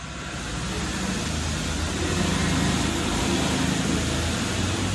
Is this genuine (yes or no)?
yes